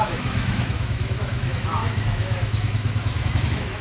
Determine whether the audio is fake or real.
fake